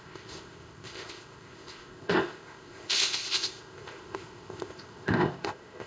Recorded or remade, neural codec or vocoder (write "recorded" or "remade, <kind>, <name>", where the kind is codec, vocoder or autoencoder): remade, codec, ZipCodec